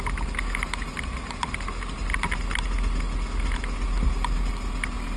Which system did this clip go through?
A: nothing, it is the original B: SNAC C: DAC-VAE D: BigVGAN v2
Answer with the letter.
A